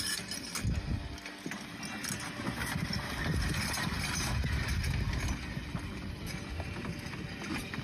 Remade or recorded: recorded